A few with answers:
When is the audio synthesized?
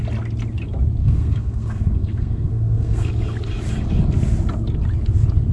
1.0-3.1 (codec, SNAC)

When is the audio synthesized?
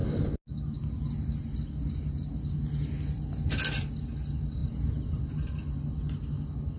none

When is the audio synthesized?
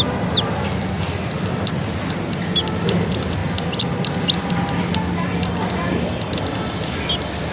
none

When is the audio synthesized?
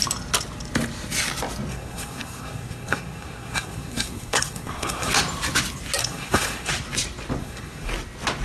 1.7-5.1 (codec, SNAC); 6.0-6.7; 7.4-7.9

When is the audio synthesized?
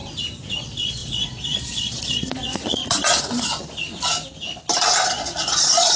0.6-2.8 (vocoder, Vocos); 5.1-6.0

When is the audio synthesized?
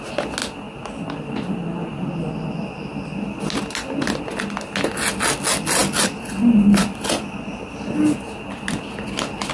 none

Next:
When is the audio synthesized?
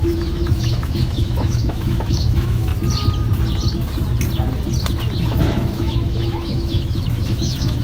0.0-2.7 (autoencoder, DAC-VAE); 5.2-7.8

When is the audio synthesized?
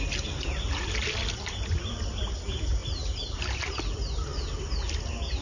none